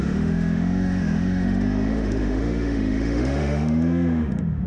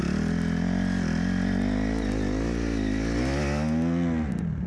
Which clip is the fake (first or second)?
first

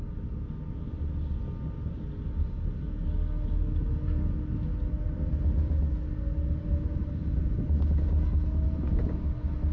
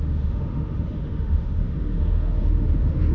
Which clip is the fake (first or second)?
second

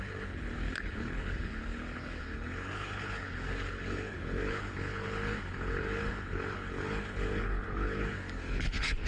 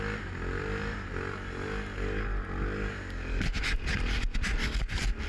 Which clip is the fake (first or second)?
first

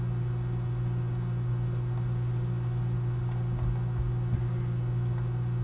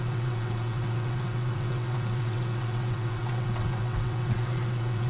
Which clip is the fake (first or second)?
second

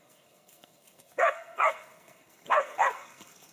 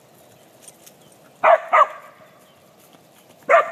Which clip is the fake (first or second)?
first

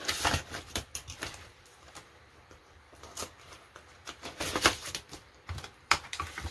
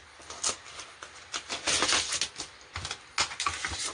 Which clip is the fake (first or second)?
first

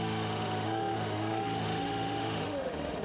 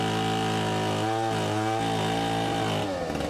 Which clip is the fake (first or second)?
first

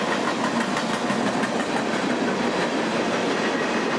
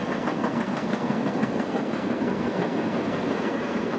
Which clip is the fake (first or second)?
second